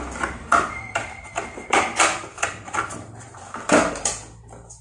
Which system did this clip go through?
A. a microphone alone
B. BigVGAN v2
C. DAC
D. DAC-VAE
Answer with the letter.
B